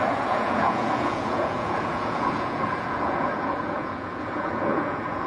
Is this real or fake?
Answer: fake